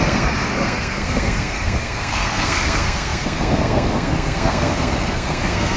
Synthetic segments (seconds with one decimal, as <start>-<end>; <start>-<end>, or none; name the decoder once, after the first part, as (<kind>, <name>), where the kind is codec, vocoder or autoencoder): 0.0-5.8 (codec, SNAC)